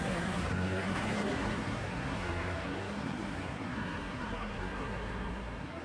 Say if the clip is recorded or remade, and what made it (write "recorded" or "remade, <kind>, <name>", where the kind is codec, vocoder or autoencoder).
remade, codec, SNAC